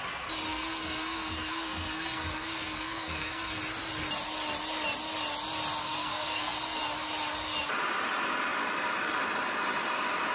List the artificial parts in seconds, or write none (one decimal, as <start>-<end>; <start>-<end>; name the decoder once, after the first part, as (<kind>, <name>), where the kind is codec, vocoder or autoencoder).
0.5-3.6 (codec, SNAC); 5.8-6.8